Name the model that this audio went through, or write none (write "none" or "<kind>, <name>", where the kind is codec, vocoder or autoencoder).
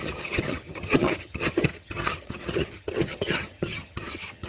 vocoder, HiFi-GAN